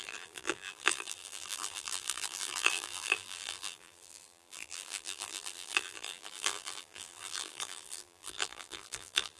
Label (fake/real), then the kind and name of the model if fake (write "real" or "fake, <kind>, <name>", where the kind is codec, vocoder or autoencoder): fake, vocoder, BigVGAN v2